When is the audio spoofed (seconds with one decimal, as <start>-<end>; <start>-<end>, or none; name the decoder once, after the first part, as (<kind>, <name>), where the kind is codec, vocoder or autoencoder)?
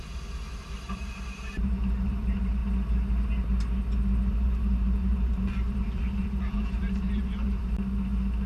0.0-2.6 (vocoder, BigVGAN v2); 4.3-7.6